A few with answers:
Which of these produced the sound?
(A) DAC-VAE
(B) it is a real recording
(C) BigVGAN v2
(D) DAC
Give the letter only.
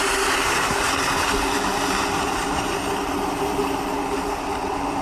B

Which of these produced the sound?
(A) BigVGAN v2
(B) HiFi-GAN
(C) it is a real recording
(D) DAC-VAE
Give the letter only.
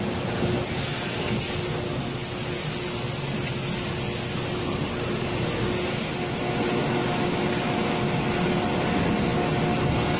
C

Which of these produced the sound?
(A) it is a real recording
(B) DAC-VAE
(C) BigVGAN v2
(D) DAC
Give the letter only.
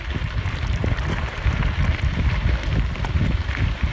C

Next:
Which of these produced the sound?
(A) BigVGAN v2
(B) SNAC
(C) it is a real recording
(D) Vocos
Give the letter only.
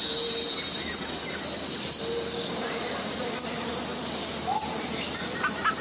C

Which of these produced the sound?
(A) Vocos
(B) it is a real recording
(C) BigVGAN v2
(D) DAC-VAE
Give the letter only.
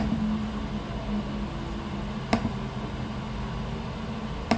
B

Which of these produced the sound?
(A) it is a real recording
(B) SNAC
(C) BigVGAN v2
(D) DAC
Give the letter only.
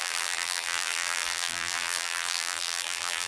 C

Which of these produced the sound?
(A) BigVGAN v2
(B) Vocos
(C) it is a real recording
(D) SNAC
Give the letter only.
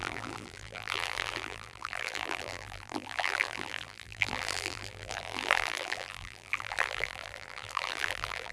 A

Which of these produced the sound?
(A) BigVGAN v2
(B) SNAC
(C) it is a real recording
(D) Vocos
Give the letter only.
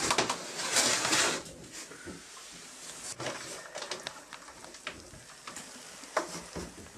C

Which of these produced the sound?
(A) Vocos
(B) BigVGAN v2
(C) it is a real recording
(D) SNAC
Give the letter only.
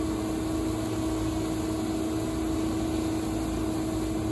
C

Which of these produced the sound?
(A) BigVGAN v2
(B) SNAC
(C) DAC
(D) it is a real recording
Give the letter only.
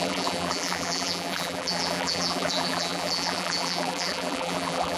A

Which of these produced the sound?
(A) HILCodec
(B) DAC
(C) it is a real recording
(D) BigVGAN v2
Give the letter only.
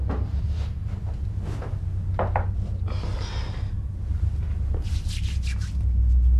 C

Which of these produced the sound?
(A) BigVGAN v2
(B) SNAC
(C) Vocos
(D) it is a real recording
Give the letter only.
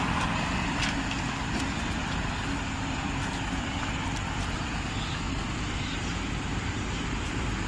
A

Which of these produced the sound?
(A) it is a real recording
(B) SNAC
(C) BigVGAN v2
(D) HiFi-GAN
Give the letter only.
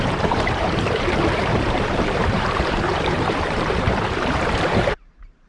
C